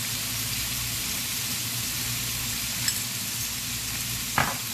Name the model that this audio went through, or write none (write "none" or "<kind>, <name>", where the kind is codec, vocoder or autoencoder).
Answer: none